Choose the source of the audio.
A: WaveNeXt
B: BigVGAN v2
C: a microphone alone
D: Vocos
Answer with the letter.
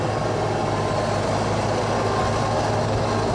C